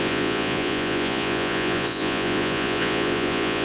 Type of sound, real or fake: fake